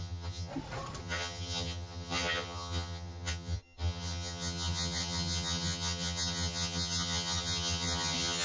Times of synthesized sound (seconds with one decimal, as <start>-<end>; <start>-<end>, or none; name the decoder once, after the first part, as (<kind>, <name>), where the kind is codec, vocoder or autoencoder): 0.0-0.5 (vocoder, HiFi-GAN); 1.0-8.4